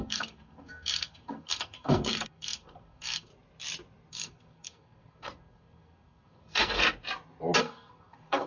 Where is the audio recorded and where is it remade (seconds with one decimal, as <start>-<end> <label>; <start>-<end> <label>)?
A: 0.0-3.3 remade; 3.3-4.1 recorded; 4.1-6.8 remade; 6.8-7.6 recorded; 7.6-8.5 remade